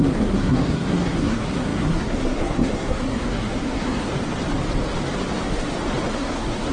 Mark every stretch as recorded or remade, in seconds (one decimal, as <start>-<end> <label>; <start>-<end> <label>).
0.0-4.1 remade; 4.1-6.1 recorded; 6.1-6.7 remade

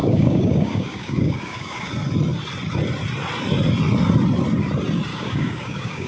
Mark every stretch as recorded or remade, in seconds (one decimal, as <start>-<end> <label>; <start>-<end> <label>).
0.0-1.9 remade; 1.9-5.1 recorded; 5.1-6.1 remade

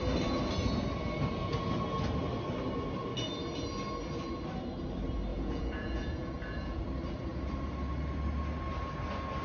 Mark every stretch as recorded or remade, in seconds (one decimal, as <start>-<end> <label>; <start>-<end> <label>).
0.0-5.3 recorded; 5.3-6.8 remade; 6.8-9.4 recorded